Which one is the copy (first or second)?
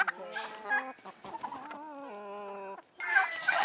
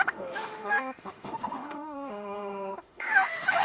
second